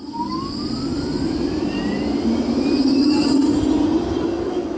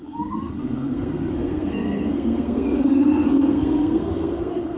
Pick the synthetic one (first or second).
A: second